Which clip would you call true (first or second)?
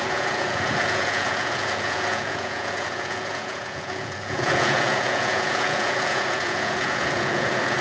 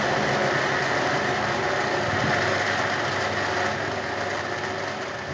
second